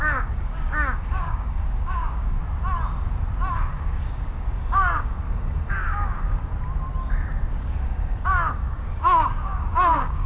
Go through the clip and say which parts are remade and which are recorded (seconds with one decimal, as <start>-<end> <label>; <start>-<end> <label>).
0.0-2.4 remade; 2.4-3.5 recorded; 3.5-6.5 remade; 6.5-7.5 recorded; 7.5-10.3 remade